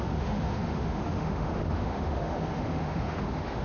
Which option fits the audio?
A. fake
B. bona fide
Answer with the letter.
A